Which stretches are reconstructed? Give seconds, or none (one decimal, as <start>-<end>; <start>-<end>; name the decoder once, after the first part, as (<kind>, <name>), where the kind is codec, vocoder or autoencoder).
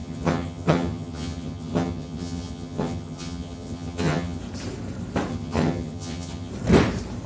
0.0-4.4 (vocoder, HiFi-GAN); 5.3-6.5